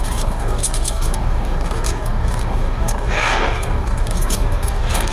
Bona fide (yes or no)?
no